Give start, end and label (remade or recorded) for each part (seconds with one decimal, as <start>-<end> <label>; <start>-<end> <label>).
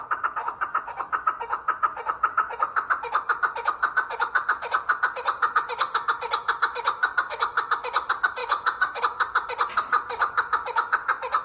0.0-8.4 recorded; 8.4-9.0 remade; 9.0-11.4 recorded